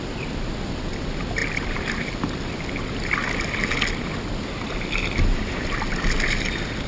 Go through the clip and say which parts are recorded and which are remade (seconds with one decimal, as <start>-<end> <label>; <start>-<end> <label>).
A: 0.0-6.9 recorded